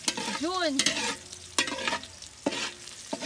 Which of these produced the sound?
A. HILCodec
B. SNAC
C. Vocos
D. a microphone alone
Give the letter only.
D